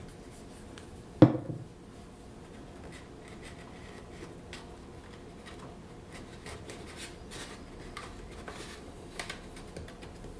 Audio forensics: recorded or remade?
recorded